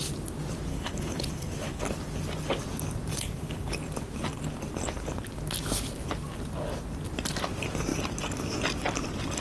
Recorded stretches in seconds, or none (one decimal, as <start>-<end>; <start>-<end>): 0.0-0.7; 1.8-3.1; 3.7-9.4